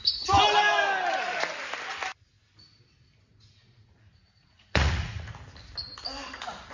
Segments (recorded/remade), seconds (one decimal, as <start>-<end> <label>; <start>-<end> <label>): 0.0-3.3 recorded; 3.3-5.3 remade; 5.3-6.7 recorded

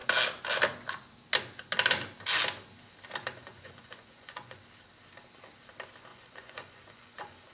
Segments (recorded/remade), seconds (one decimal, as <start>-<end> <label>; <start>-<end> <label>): 0.0-3.4 recorded; 3.4-4.6 remade; 4.6-6.1 recorded; 6.1-7.5 remade

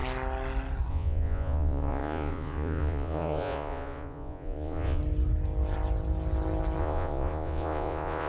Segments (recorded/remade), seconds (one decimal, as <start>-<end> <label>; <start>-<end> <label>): 0.0-0.9 recorded; 0.9-5.0 remade; 5.0-6.8 recorded; 6.8-8.3 remade